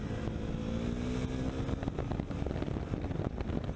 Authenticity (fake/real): real